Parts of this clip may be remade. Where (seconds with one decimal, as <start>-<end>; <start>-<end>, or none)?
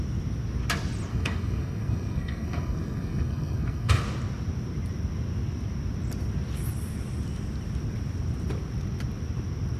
1.1-3.9